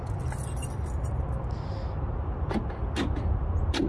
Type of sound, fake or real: real